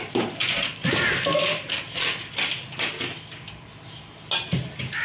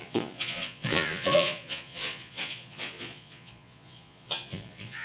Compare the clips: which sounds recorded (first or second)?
first